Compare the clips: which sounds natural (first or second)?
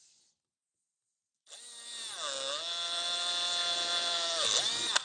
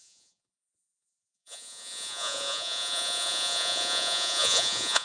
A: first